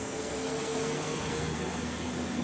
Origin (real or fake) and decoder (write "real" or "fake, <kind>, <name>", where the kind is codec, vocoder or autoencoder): fake, codec, SNAC